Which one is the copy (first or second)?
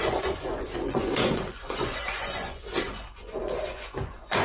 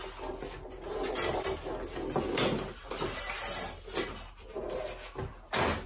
first